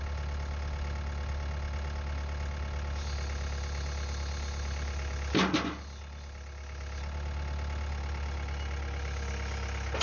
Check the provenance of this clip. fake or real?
real